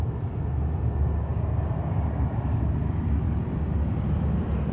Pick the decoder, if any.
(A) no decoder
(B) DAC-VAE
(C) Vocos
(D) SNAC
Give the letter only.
A